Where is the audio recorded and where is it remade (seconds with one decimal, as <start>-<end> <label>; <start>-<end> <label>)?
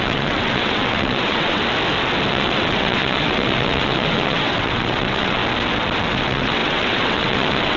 0.0-1.6 remade; 1.6-2.3 recorded; 2.3-5.4 remade; 5.4-6.1 recorded; 6.1-7.8 remade